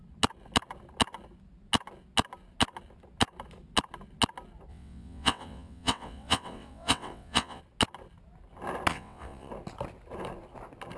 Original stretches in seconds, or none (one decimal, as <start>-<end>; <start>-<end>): 0.0-4.7; 7.6-8.9; 9.5-11.0